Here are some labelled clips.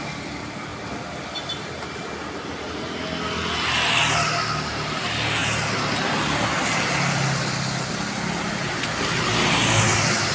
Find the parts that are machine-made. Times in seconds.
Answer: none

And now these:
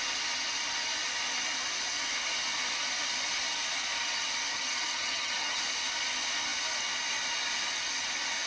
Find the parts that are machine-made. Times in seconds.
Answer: 4.5-5.6